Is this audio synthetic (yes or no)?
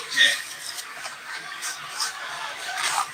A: yes